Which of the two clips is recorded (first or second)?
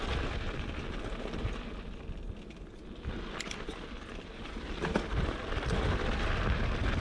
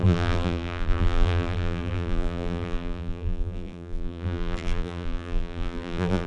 first